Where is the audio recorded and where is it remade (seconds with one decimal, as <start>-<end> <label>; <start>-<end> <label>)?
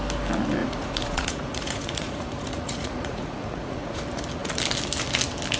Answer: 0.0-0.6 recorded; 0.6-4.0 remade; 4.0-5.6 recorded